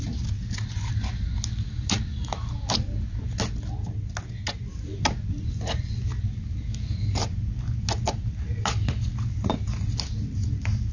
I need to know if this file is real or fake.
real